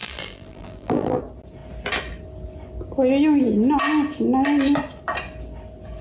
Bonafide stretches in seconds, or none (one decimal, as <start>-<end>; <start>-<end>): 1.2-6.0